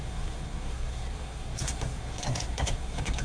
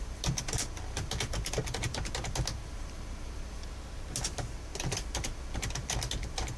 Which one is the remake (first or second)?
first